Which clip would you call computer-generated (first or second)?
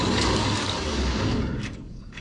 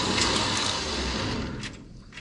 first